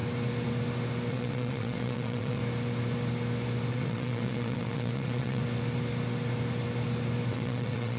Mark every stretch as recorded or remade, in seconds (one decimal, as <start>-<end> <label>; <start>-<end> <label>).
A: 0.0-1.1 recorded; 1.1-2.4 remade; 2.4-3.7 recorded; 3.7-5.4 remade; 5.4-7.3 recorded; 7.3-8.0 remade